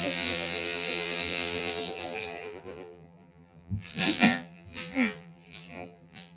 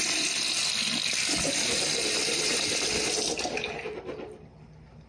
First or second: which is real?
second